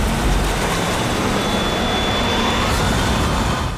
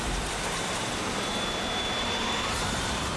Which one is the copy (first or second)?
second